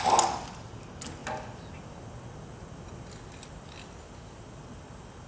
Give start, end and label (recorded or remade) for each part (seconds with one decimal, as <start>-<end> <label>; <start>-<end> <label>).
0.0-5.3 recorded